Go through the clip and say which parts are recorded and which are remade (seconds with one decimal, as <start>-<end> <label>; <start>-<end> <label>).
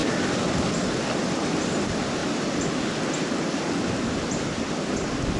0.0-5.4 recorded